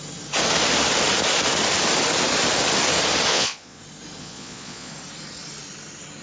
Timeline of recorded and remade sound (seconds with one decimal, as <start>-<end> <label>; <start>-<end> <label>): 0.0-3.3 recorded; 3.3-3.8 remade; 3.8-4.2 recorded; 4.2-4.9 remade; 4.9-6.2 recorded